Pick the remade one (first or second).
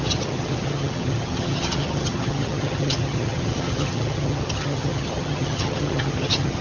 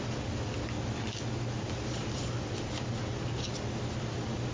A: first